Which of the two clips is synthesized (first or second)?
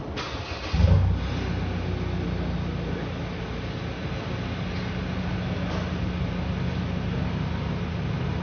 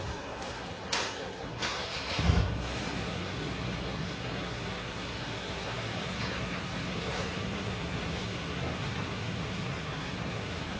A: second